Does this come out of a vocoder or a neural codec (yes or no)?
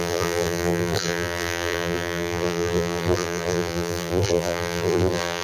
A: yes